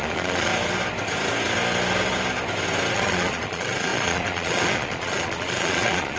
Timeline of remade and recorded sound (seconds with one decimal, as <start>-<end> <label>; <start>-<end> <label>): 0.0-0.5 remade; 0.5-2.9 recorded; 2.9-6.2 remade